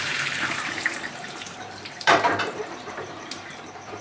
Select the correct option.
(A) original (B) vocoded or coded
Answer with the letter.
B